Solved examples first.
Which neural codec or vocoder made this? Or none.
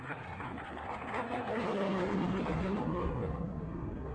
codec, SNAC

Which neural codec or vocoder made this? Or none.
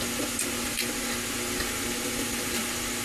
none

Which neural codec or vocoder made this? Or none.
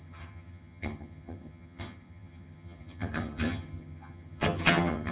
vocoder, HiFi-GAN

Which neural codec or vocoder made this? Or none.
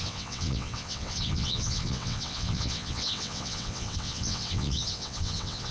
vocoder, WaveNeXt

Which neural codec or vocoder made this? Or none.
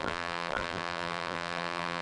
vocoder, BigVGAN v2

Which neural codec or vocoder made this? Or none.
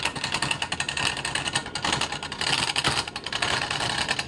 none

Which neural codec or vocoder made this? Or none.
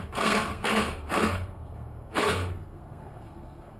codec, SNAC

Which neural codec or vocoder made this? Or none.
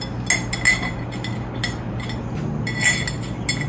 none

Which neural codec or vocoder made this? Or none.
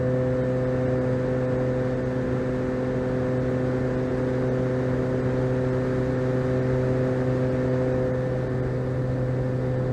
none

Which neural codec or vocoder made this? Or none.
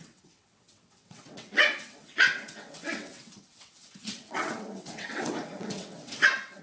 vocoder, WaveNeXt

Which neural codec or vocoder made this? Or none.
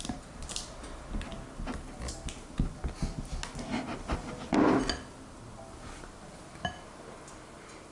none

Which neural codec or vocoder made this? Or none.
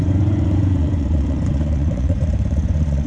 vocoder, Vocos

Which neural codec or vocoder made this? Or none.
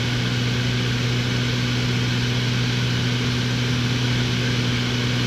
none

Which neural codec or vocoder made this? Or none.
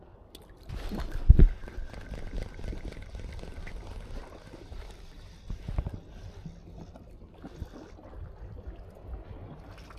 none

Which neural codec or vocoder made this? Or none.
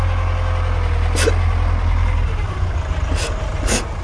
none